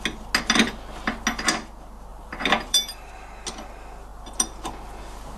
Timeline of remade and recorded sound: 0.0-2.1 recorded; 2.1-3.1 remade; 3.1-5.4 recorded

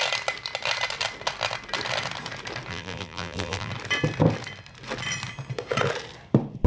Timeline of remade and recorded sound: 0.0-2.7 recorded; 2.7-3.7 remade; 3.7-6.7 recorded

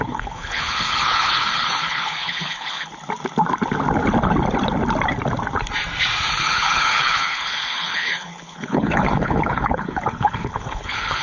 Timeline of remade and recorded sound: 0.0-2.9 remade; 2.9-6.3 recorded; 6.3-11.2 remade

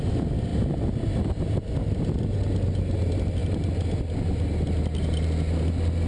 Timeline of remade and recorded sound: 0.0-6.1 recorded